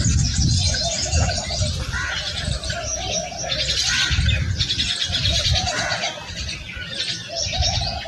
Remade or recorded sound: recorded